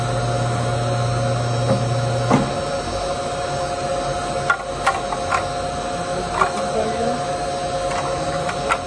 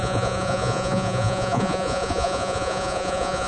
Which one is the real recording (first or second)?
first